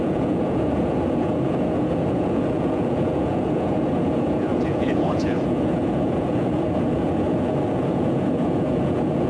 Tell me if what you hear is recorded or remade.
remade